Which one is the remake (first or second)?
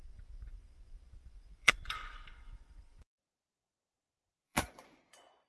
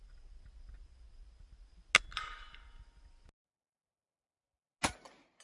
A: first